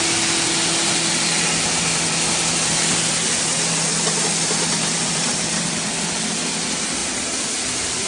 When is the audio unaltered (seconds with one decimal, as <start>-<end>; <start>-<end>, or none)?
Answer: 0.0-8.1